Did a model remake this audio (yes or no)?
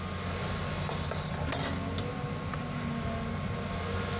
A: no